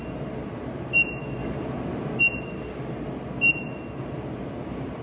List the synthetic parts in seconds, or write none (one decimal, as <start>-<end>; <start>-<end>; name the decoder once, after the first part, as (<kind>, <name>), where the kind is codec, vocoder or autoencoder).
none